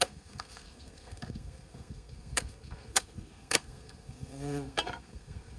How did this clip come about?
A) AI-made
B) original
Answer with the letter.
A